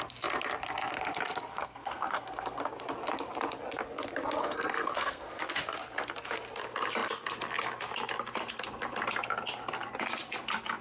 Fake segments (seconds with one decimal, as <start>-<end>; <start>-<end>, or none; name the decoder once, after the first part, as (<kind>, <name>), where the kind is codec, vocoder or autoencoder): 1.6-2.6 (codec, SNAC); 4.4-5.4

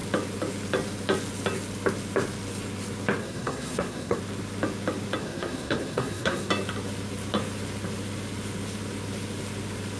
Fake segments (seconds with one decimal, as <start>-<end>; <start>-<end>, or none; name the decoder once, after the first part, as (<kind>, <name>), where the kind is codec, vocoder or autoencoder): 3.2-4.2 (codec, SNAC); 5.2-6.5

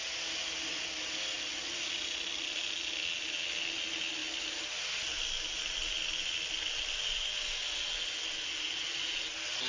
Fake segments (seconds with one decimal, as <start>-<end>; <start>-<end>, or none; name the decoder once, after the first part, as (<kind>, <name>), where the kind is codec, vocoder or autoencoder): none

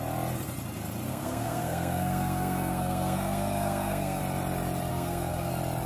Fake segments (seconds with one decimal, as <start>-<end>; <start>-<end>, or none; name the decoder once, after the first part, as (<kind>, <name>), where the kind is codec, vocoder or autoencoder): 1.1-4.2 (codec, SNAC); 4.9-5.5

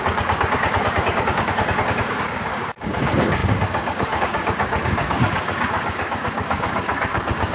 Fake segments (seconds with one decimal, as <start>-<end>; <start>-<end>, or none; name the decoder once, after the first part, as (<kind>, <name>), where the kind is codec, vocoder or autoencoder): 0.0-7.5 (codec, DAC)

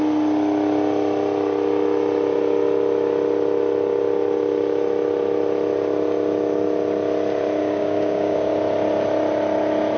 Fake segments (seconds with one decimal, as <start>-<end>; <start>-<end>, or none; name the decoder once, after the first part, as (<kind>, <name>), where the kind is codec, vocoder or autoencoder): 7.6-8.5 (codec, DAC)